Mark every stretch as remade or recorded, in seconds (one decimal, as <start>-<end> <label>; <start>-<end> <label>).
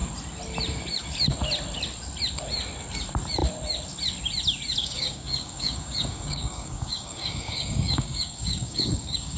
0.0-4.8 recorded; 4.8-9.4 remade